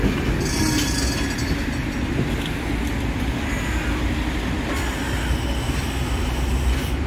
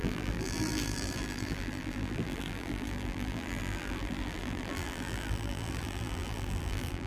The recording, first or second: first